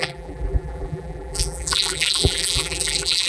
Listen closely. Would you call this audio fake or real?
fake